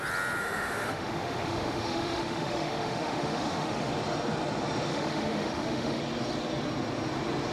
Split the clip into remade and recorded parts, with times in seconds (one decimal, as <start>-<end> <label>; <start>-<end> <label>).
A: 0.0-0.4 recorded; 0.4-3.9 remade; 3.9-4.9 recorded; 4.9-6.0 remade; 6.0-7.5 recorded